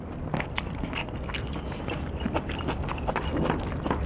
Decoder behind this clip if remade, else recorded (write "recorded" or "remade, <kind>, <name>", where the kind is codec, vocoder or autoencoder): recorded